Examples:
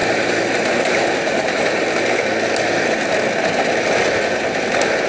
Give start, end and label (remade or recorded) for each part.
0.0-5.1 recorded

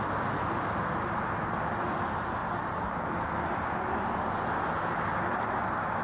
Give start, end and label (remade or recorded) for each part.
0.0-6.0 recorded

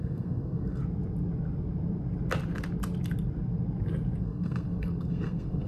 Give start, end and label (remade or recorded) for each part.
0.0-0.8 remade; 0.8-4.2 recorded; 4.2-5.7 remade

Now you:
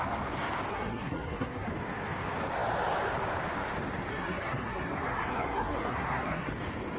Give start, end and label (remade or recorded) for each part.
0.0-0.7 recorded; 0.7-1.7 remade; 1.7-4.1 recorded; 4.1-6.5 remade; 6.5-7.0 recorded

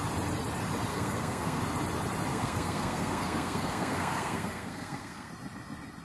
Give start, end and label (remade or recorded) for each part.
0.0-0.9 recorded; 0.9-1.6 remade; 1.6-2.3 recorded; 2.3-5.3 remade; 5.3-6.0 recorded

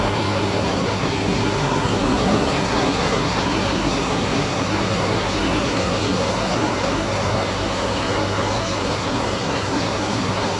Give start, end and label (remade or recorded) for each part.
0.0-10.6 remade

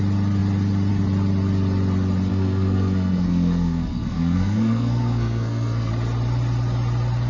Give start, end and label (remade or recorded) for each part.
0.0-2.3 recorded; 2.3-5.9 remade; 5.9-7.3 recorded